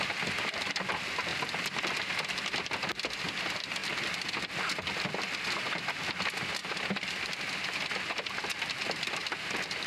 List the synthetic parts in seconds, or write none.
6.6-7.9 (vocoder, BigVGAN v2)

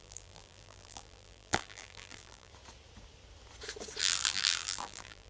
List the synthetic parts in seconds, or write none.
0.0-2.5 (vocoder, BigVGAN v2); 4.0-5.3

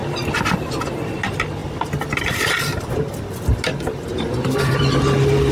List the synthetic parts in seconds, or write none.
4.1-4.8 (vocoder, BigVGAN v2)

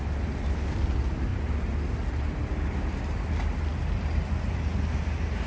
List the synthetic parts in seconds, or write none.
none

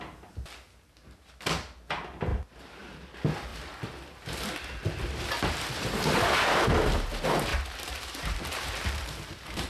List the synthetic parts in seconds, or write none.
2.3-2.9 (vocoder, BigVGAN v2); 7.5-9.7